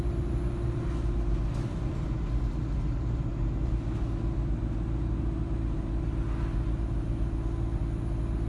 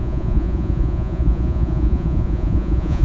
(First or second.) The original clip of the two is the first